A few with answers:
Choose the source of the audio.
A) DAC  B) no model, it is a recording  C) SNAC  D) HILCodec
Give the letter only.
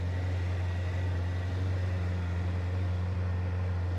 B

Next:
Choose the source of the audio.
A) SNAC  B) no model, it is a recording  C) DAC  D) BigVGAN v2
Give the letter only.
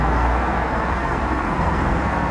A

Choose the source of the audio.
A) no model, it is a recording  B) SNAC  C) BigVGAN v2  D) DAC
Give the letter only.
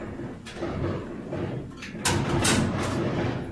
A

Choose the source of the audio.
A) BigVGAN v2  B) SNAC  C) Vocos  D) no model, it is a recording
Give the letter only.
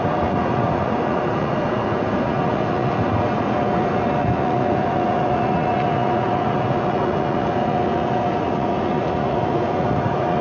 C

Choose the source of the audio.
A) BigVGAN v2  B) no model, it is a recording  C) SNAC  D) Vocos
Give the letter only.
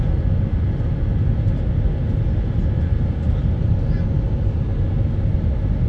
B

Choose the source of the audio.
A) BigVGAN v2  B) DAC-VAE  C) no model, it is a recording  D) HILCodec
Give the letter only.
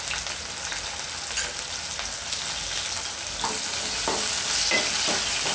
C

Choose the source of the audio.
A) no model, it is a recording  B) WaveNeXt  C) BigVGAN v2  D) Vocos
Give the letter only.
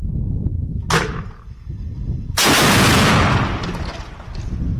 A